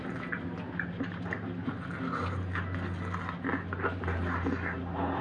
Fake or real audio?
real